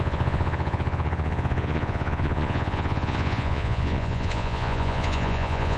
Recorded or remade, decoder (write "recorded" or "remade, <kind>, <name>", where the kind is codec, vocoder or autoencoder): remade, vocoder, Vocos